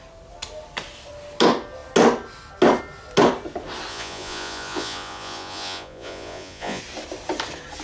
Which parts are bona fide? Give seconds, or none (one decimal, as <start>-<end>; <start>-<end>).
0.0-3.9; 6.8-7.8